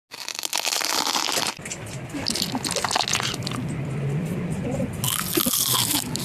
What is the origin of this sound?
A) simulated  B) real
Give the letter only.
B